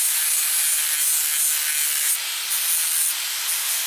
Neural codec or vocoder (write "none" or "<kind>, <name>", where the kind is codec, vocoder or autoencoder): none